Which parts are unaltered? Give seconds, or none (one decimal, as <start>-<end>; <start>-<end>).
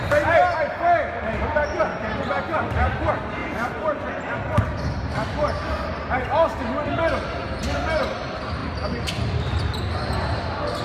0.0-10.8